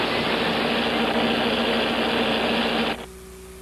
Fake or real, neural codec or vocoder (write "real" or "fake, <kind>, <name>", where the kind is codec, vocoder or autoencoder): real